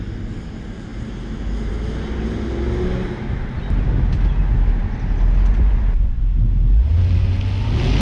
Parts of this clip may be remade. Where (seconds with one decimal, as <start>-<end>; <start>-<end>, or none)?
5.5-6.2